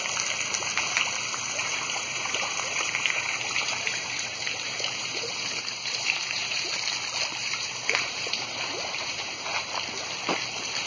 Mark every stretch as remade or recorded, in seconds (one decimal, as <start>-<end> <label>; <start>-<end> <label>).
0.0-1.6 recorded; 1.6-6.7 remade; 6.7-7.4 recorded; 7.4-9.4 remade; 9.4-10.9 recorded